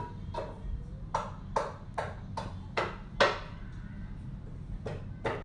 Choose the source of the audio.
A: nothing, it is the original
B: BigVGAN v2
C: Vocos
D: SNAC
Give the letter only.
A